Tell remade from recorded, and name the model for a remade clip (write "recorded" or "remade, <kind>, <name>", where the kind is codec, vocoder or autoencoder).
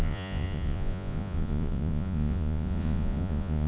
remade, vocoder, Vocos